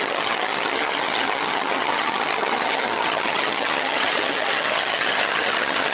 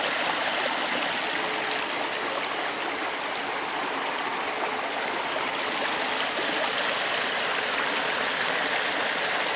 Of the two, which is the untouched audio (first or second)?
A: second